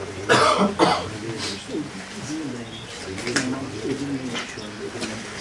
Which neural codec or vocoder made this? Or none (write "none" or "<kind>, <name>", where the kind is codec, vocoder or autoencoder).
none